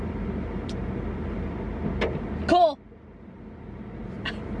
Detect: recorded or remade recorded